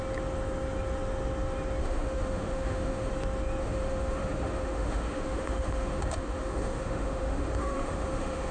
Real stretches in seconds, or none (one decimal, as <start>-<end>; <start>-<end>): 0.0-1.8; 3.1-3.6